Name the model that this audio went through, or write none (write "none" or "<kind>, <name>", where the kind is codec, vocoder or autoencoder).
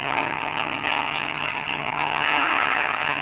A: vocoder, HiFi-GAN